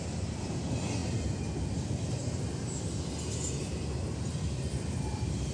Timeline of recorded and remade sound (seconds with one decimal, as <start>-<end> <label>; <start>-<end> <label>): 0.0-5.5 recorded